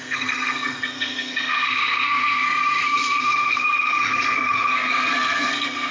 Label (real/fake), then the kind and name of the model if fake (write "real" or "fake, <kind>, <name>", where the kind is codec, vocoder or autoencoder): fake, codec, SNAC